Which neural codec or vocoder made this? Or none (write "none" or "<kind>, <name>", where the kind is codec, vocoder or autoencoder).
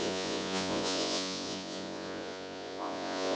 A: vocoder, Vocos